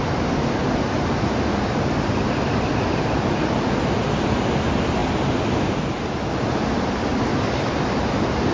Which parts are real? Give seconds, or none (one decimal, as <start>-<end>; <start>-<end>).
0.0-8.5

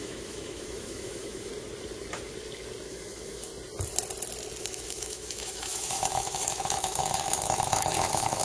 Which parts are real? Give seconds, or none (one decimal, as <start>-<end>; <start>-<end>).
1.5-2.9; 3.5-4.6

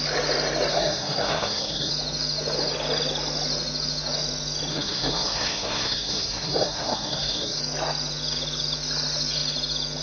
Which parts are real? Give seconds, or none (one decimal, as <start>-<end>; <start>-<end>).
0.0-0.7; 1.9-4.7; 7.6-10.0

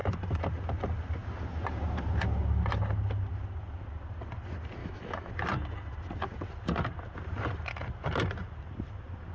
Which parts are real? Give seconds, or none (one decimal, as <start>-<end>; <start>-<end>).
0.0-4.8; 5.3-9.3